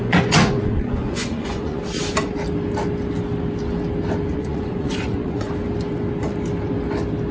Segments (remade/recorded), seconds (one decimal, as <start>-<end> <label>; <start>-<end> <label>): 0.0-1.8 remade; 1.8-4.3 recorded; 4.3-5.5 remade; 5.5-7.3 recorded